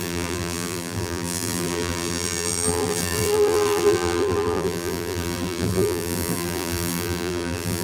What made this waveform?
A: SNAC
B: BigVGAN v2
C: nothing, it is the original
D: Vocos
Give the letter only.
B